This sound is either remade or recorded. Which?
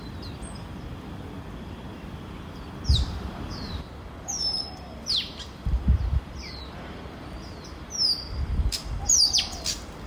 remade